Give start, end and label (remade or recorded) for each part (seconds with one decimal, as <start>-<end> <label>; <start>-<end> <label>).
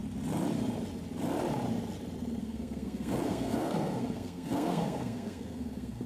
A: 0.0-2.4 recorded; 2.4-6.1 remade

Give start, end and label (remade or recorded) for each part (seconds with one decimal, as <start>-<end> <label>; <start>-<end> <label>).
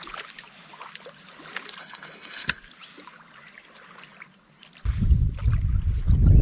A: 0.0-1.8 recorded; 1.8-2.6 remade; 2.6-6.4 recorded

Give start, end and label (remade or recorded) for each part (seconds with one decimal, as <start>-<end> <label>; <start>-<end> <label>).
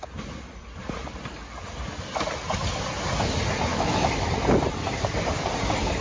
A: 0.0-3.7 recorded; 3.7-4.3 remade; 4.3-6.0 recorded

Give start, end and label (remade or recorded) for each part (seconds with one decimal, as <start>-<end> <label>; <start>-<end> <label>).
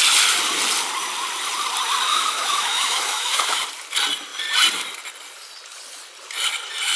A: 0.0-2.1 recorded; 2.1-3.6 remade; 3.6-7.0 recorded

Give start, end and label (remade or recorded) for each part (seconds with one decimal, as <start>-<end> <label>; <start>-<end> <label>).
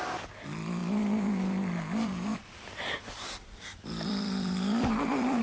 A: 0.0-0.8 recorded; 0.8-1.4 remade; 1.4-2.3 recorded; 2.3-5.4 remade